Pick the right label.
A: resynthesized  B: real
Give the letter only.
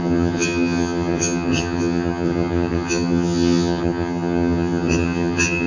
A